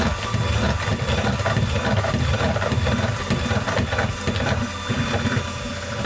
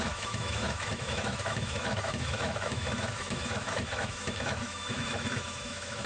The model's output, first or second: second